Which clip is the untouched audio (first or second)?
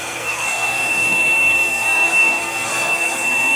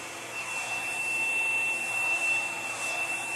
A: second